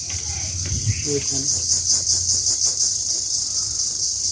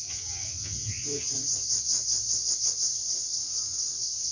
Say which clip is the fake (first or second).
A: second